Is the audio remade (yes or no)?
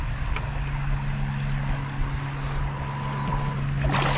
no